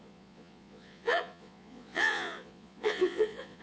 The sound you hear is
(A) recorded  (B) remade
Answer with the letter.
B